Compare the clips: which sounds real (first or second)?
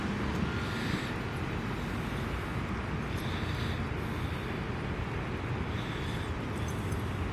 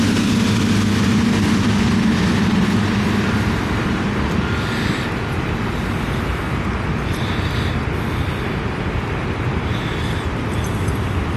first